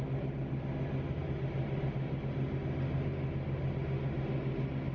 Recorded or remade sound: recorded